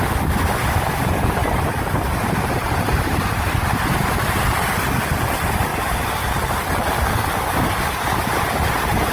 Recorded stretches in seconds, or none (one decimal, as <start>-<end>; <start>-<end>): 0.0-1.4; 3.4-9.1